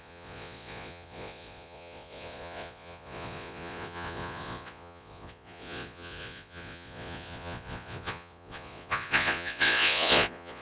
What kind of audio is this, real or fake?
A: fake